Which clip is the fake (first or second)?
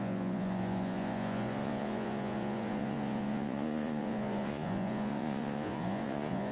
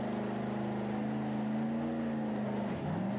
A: first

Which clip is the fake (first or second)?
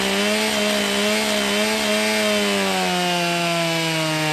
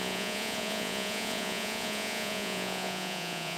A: second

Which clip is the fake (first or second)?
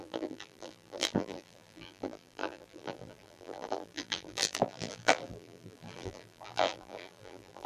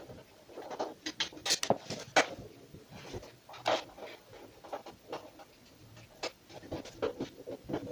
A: first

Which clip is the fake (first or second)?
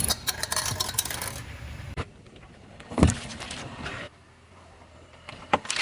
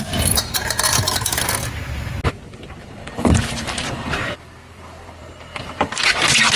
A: first